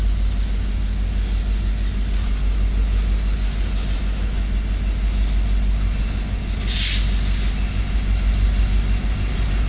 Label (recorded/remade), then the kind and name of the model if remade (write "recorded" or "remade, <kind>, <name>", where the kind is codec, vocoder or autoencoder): recorded